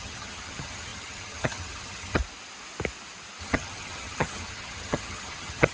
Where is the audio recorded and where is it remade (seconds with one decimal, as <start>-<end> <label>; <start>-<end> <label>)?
0.0-2.2 remade; 2.2-3.4 recorded; 3.4-5.7 remade